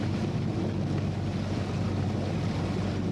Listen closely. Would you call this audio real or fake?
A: real